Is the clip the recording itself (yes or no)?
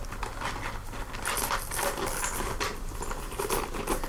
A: yes